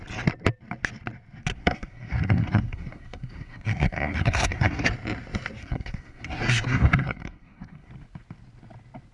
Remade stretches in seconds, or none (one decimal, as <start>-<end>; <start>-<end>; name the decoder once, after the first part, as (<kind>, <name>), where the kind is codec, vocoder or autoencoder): 1.5-4.9 (codec, SNAC); 5.6-7.9